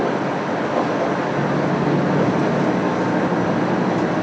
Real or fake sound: real